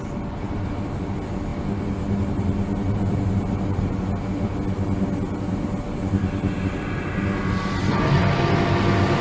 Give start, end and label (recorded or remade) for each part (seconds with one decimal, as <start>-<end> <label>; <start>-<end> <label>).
0.0-9.2 recorded